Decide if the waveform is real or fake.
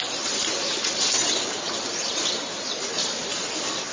real